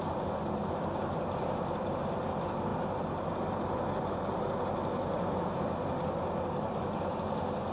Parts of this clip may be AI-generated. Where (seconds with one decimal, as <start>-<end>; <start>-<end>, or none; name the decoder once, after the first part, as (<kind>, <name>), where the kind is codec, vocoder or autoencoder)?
none